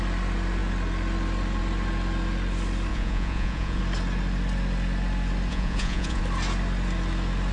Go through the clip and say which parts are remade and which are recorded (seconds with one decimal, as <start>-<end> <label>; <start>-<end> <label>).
0.0-2.9 recorded; 2.9-3.8 remade; 3.8-5.5 recorded; 5.5-6.2 remade; 6.2-7.5 recorded